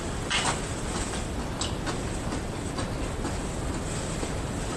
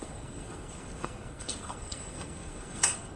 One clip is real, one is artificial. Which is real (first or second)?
first